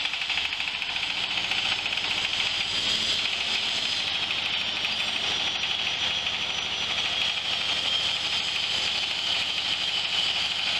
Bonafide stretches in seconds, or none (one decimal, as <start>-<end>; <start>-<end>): 0.0-10.8